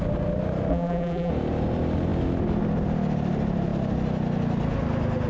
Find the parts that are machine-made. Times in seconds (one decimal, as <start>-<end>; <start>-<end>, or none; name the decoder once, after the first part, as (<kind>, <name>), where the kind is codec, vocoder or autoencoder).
0.7-1.3 (vocoder, BigVGAN v2)

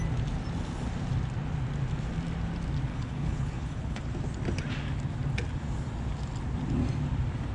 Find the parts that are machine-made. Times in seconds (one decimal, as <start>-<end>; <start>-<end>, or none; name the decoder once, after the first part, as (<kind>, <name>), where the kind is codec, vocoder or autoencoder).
2.9-4.0 (codec, HILCodec)